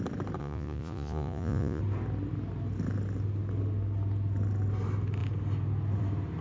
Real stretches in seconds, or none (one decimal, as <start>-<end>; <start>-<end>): 0.0-0.4; 1.8-6.4